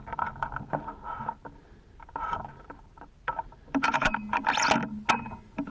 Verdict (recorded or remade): recorded